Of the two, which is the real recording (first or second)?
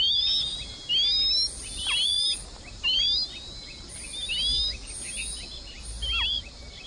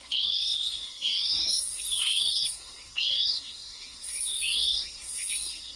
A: first